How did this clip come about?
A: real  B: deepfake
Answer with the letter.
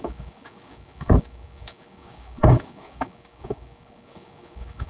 B